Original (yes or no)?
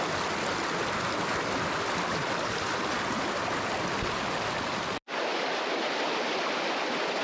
yes